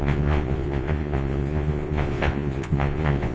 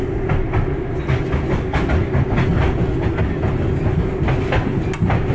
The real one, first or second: second